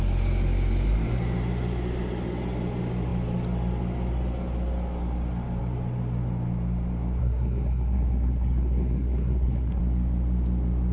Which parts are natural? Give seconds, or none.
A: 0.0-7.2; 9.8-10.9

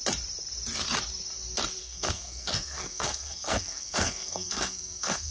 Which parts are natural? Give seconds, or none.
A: 0.0-1.8

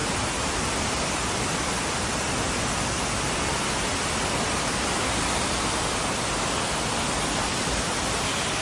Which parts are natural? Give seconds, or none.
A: 0.0-8.6